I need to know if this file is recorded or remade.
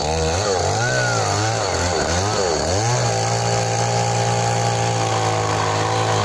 recorded